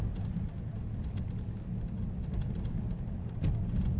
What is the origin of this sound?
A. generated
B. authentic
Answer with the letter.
B